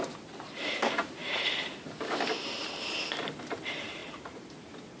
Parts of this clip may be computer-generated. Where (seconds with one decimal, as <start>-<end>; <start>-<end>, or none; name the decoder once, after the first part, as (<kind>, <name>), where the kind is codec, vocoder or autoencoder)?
0.0-1.2 (vocoder, BigVGAN v2); 3.5-5.0